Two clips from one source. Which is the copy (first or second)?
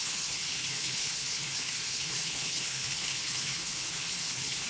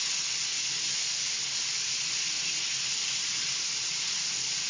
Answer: first